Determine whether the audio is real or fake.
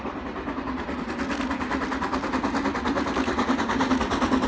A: real